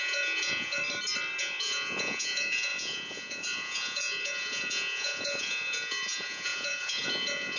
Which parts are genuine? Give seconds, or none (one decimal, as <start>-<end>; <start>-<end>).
0.8-1.4